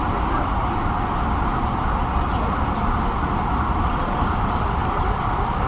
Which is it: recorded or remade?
recorded